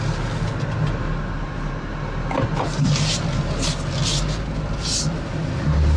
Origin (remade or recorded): recorded